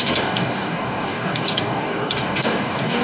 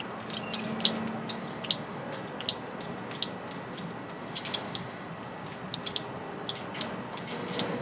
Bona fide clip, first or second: second